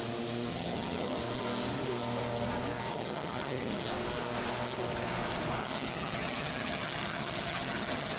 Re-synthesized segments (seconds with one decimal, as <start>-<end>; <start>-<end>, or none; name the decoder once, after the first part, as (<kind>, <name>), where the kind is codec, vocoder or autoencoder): 0.5-1.2 (vocoder, HiFi-GAN); 2.9-3.9; 5.6-8.2